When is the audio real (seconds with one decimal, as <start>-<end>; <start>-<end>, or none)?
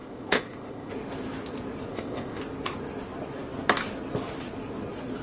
0.9-1.9; 2.4-5.2